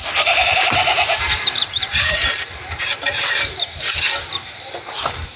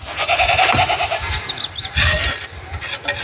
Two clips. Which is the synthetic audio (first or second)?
first